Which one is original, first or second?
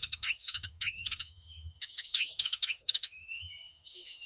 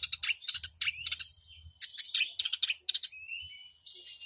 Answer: second